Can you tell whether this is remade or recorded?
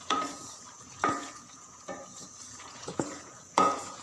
remade